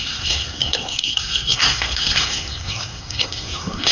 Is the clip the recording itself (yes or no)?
no